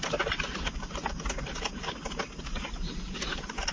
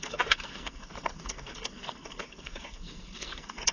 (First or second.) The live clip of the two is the first